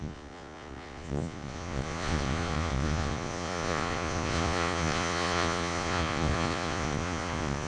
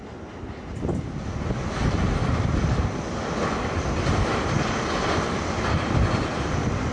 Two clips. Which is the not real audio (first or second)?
first